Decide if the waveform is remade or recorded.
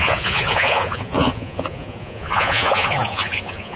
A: remade